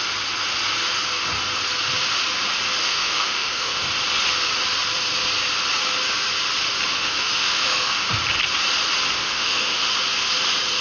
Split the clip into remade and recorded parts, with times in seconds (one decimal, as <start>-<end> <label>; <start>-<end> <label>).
0.0-2.8 recorded; 2.8-3.8 remade; 3.8-6.9 recorded; 6.9-8.1 remade; 8.1-9.2 recorded; 9.2-9.9 remade; 9.9-10.8 recorded